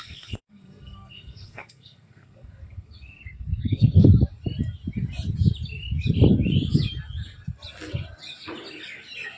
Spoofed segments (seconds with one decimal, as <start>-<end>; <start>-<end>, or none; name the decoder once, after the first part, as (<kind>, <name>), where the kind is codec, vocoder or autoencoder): 0.0-4.1 (codec, SNAC)